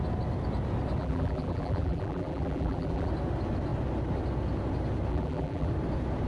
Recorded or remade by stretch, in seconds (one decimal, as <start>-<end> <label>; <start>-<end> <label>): 0.0-1.0 recorded; 1.0-3.1 remade; 3.1-5.1 recorded; 5.1-5.7 remade; 5.7-6.3 recorded